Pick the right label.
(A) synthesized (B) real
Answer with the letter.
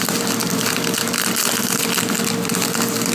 A